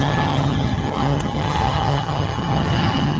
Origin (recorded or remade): remade